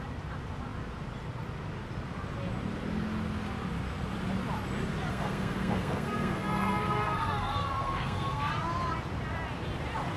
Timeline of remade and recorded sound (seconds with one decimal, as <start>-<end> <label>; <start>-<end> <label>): 0.0-5.1 recorded; 5.1-8.5 remade; 8.5-10.2 recorded